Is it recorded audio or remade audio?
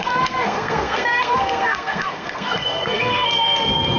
remade